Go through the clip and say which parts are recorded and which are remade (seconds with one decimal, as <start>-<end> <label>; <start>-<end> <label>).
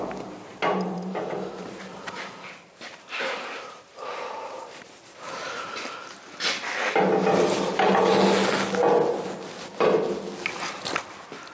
0.0-0.5 recorded; 0.5-5.7 remade; 5.7-11.5 recorded